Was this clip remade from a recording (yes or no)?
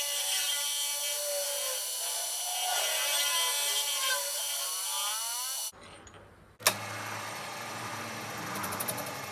no